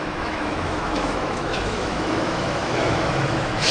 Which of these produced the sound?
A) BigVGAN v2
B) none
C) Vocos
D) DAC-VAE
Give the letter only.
D